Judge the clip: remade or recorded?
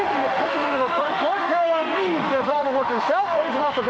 remade